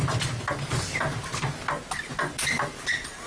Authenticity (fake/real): real